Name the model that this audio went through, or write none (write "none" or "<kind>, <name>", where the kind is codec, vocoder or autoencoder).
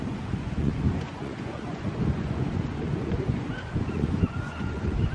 vocoder, Vocos